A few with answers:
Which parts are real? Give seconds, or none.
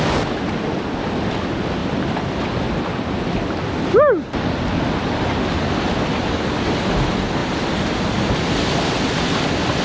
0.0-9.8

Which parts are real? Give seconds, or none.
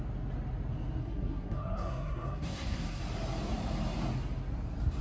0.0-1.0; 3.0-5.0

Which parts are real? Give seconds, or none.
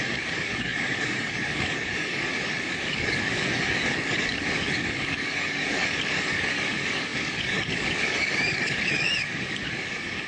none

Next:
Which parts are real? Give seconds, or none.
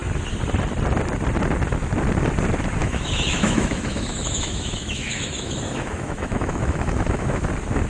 0.0-2.8; 7.5-7.9